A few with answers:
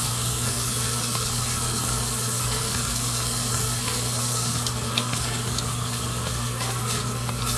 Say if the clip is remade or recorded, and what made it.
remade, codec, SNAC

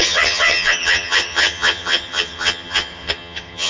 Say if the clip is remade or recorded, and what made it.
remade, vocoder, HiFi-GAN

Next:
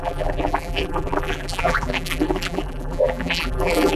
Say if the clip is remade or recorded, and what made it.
remade, vocoder, BigVGAN v2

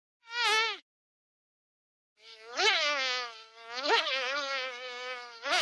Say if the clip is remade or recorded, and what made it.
remade, codec, DAC